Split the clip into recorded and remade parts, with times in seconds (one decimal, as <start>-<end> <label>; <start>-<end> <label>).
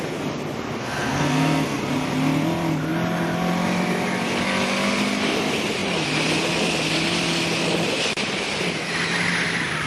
0.0-0.8 recorded; 0.8-1.8 remade; 1.8-9.9 recorded